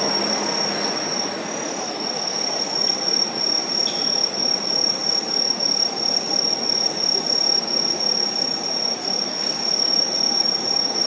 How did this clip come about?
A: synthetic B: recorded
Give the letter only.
B